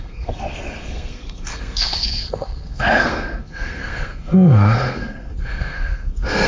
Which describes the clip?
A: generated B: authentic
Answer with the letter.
A